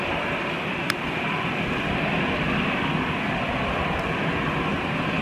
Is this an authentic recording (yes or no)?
yes